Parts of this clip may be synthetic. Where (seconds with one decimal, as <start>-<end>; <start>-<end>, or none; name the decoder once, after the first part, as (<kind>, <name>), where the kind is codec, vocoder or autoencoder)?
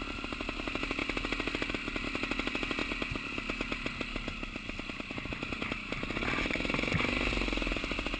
0.0-1.0 (vocoder, BigVGAN v2); 1.7-2.8; 7.3-8.2